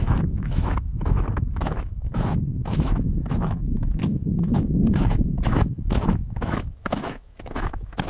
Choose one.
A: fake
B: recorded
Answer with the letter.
A